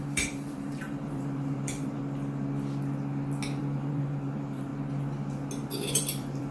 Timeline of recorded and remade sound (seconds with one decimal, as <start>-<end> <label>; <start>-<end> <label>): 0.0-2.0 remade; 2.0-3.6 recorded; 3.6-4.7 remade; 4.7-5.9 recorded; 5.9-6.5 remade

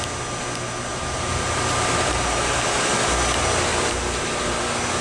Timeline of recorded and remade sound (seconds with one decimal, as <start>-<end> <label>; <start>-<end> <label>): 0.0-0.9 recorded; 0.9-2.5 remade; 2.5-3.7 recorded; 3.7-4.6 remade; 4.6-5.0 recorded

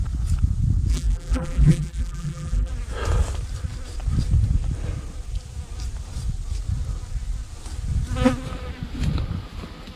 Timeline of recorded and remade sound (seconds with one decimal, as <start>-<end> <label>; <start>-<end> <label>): 0.0-0.9 recorded; 0.9-2.7 remade; 2.7-10.0 recorded

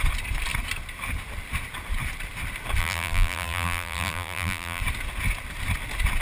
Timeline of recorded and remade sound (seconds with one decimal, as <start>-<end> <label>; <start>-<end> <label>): 0.0-2.8 recorded; 2.8-4.8 remade; 4.8-6.2 recorded

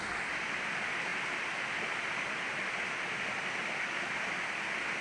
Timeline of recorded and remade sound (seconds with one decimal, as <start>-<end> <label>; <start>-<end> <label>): 0.0-5.0 recorded